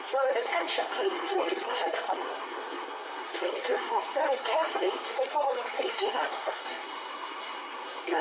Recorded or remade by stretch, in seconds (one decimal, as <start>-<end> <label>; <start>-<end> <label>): 0.0-8.2 remade

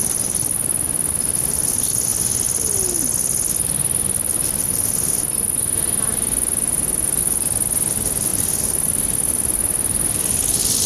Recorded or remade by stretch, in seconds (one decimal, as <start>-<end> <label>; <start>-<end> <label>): 0.0-10.9 recorded

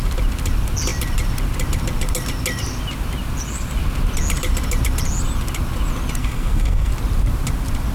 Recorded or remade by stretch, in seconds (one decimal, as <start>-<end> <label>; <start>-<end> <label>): 0.0-6.2 recorded; 6.2-6.9 remade; 6.9-7.9 recorded

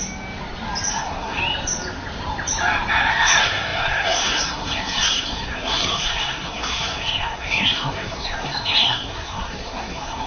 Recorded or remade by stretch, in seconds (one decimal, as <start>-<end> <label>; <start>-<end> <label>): 0.0-0.9 recorded; 0.9-1.4 remade; 1.4-3.1 recorded; 3.1-10.3 remade

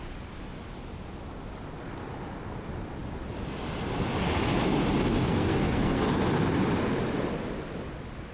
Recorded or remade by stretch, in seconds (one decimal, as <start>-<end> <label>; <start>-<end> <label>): 0.0-5.2 recorded; 5.2-6.1 remade; 6.1-8.3 recorded